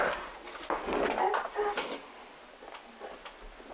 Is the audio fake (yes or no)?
no